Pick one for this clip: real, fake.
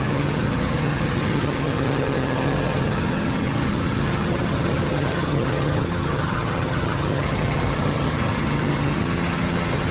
fake